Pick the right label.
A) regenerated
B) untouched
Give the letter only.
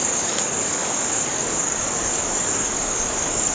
A